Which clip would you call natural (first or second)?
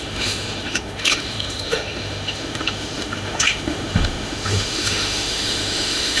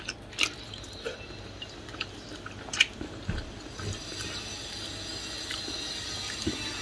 second